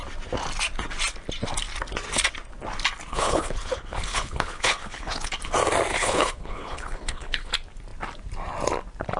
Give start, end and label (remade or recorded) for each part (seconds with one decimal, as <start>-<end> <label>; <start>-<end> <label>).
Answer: 0.0-3.1 recorded; 3.1-5.3 remade; 5.3-5.9 recorded; 5.9-7.5 remade; 7.5-9.2 recorded